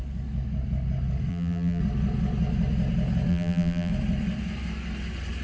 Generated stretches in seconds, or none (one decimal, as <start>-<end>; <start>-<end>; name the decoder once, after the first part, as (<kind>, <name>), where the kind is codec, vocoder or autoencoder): 1.3-1.8 (vocoder, BigVGAN v2); 3.3-3.9